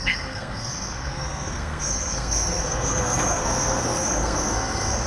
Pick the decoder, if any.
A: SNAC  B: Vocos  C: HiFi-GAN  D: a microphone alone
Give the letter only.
A